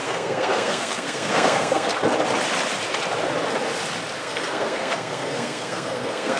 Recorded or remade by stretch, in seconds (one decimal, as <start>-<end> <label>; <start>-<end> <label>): 0.0-1.9 remade; 1.9-4.2 recorded; 4.2-6.4 remade